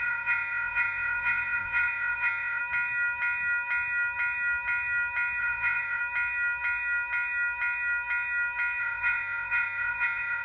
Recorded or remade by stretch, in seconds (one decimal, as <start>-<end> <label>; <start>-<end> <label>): 0.0-2.6 remade; 2.6-5.4 recorded; 5.4-6.0 remade; 6.0-8.8 recorded; 8.8-10.4 remade